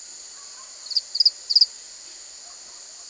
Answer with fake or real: real